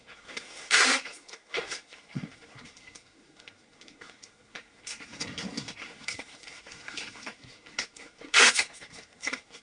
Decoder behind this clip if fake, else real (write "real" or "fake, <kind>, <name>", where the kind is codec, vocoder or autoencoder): fake, codec, SNAC